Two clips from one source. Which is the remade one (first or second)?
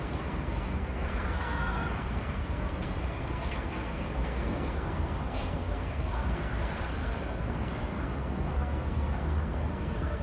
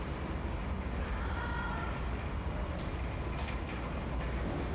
first